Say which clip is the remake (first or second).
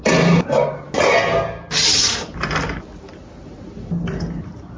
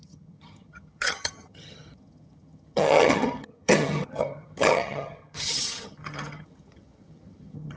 second